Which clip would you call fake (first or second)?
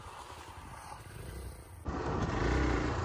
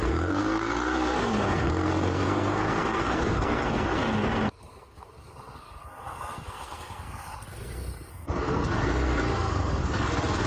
second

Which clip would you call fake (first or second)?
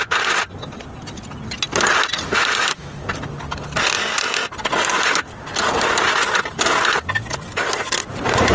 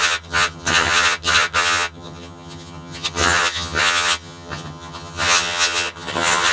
second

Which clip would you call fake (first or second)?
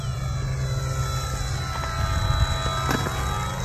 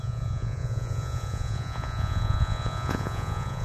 second